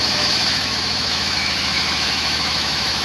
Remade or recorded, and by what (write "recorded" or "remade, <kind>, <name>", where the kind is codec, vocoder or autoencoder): remade, autoencoder, DAC-VAE